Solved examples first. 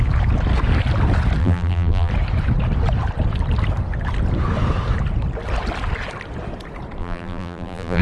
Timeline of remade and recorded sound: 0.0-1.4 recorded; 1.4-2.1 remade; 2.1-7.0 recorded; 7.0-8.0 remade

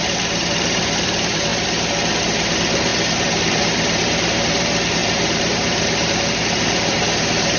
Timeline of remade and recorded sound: 0.0-1.5 remade; 1.5-2.2 recorded; 2.2-7.6 remade